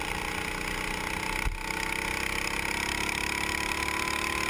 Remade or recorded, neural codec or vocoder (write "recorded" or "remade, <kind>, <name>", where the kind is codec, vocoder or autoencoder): recorded